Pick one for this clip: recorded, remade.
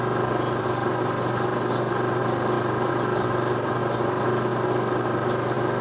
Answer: recorded